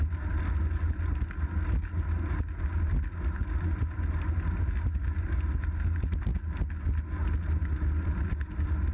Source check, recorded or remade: recorded